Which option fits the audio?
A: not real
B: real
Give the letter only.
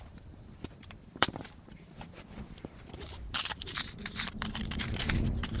A